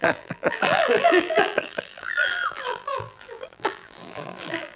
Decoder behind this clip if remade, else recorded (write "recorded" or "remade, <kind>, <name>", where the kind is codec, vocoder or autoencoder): remade, vocoder, BigVGAN v2